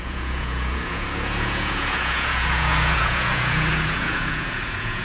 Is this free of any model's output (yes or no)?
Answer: no